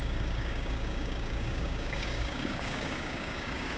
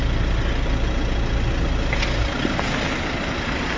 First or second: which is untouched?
second